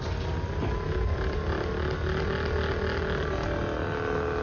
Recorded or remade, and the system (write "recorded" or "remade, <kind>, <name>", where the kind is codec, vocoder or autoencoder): recorded